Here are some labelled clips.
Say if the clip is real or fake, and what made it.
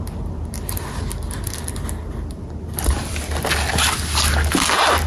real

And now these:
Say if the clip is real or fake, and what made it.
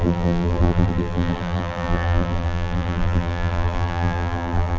fake, vocoder, BigVGAN v2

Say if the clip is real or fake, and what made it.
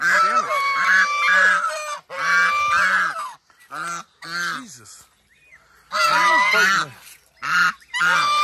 real